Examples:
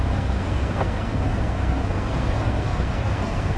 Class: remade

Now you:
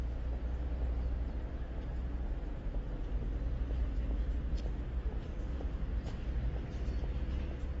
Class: recorded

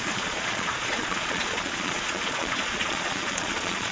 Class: remade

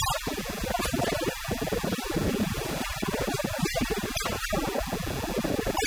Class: recorded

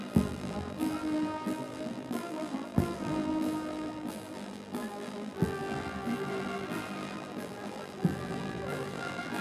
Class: remade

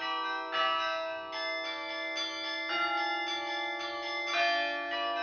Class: recorded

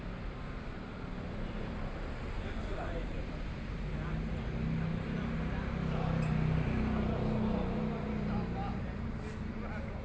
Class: recorded